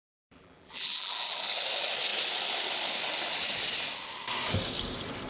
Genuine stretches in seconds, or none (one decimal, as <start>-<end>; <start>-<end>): 1.5-5.3